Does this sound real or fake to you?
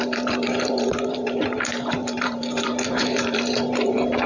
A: fake